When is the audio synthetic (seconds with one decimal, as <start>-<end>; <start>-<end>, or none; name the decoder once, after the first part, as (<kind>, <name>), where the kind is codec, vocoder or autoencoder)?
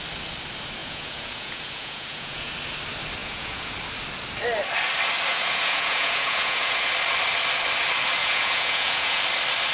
0.8-2.5 (vocoder, Vocos); 3.2-3.7; 5.3-6.9; 8.2-9.2